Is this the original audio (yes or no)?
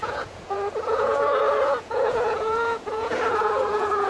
no